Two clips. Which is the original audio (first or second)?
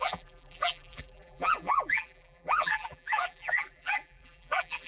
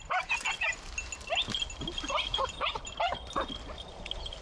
second